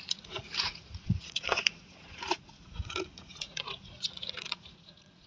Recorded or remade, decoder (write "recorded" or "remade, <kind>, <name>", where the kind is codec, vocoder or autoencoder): remade, vocoder, Vocos